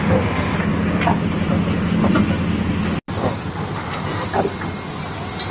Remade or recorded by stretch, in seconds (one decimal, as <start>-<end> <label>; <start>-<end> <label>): 0.0-0.7 recorded; 0.7-2.2 remade; 2.2-5.5 recorded